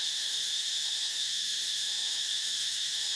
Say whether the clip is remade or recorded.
remade